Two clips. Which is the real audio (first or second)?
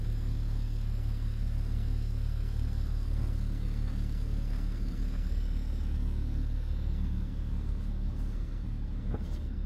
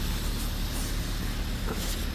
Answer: second